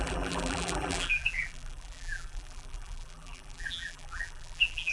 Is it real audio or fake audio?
fake